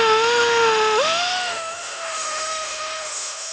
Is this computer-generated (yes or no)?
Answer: yes